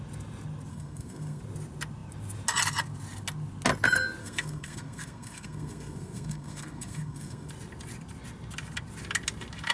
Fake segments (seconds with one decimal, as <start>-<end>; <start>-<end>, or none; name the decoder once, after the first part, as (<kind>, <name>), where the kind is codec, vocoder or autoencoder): 0.7-1.4 (codec, SNAC); 4.2-7.5